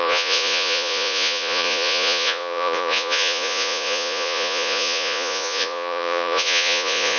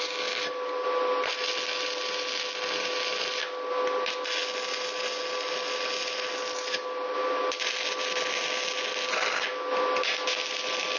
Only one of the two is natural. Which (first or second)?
second